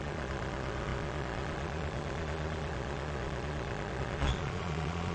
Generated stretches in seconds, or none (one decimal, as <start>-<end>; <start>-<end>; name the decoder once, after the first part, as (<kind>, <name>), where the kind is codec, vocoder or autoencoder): 0.0-5.1 (vocoder, Vocos)